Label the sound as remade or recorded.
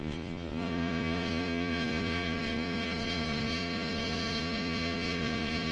remade